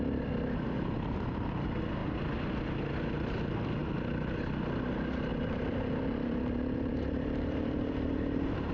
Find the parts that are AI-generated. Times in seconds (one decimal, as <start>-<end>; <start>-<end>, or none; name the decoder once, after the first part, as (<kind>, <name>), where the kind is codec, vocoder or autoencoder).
5.3-8.7 (vocoder, BigVGAN v2)